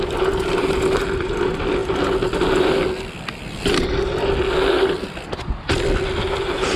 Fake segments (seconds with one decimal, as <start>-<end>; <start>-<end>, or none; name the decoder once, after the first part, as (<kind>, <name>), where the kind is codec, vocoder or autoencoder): none